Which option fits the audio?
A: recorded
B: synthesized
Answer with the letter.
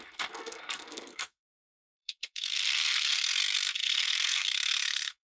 B